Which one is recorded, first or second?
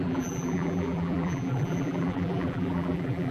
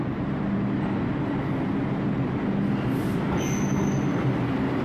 second